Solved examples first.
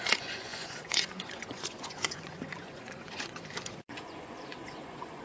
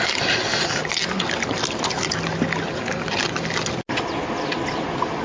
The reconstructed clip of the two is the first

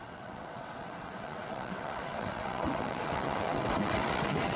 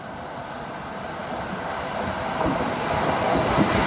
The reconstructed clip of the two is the first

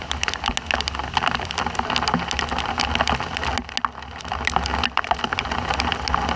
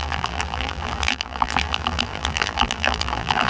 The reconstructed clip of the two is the second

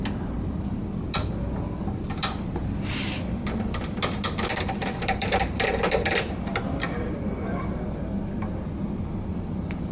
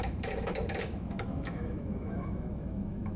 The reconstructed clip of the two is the second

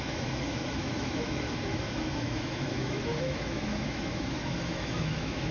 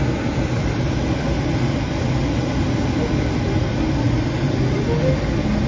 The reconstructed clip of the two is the first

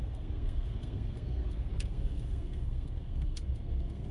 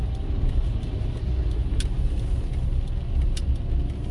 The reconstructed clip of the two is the first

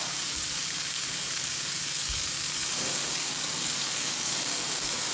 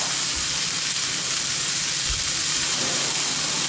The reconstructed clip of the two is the first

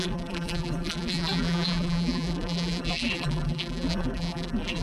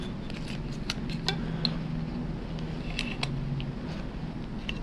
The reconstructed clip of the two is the first